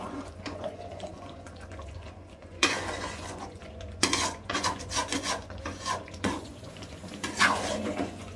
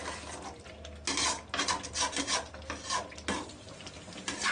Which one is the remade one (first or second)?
first